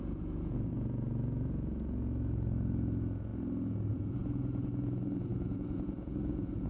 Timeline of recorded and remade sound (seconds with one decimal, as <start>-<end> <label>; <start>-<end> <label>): 0.0-3.3 remade; 3.3-3.9 recorded; 3.9-6.7 remade